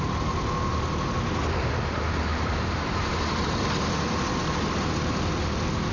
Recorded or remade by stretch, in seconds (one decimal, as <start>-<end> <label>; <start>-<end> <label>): 0.0-2.3 recorded; 2.3-3.2 remade; 3.2-5.9 recorded